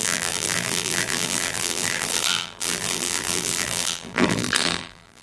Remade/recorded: remade